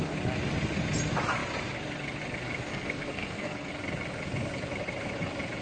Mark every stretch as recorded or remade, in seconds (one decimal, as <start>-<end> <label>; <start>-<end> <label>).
0.0-2.7 recorded; 2.7-3.7 remade; 3.7-5.6 recorded